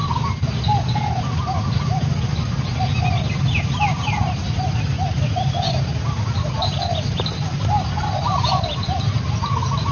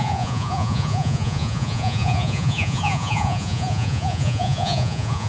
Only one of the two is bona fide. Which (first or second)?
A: first